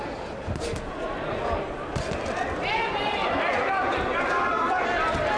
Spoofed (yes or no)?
yes